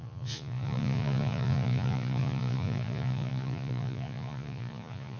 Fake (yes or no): yes